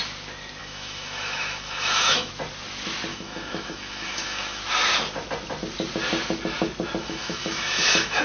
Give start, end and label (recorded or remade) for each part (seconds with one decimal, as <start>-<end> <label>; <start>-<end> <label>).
0.0-0.6 recorded; 0.6-2.3 remade; 2.3-3.1 recorded; 3.1-4.6 remade; 4.6-7.0 recorded; 7.0-8.2 remade